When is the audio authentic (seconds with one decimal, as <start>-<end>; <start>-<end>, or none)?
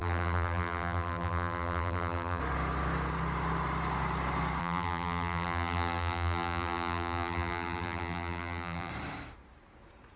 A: 2.4-4.6; 8.9-10.2